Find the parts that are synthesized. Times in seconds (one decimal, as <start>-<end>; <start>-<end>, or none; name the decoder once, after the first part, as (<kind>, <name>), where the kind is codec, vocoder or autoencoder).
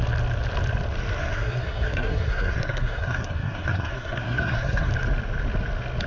1.2-4.9 (codec, SNAC)